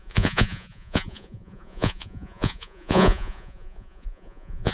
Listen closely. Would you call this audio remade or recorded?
remade